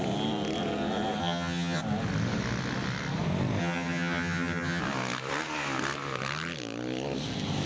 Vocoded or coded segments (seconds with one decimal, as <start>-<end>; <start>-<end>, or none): 1.2-1.8; 3.6-4.8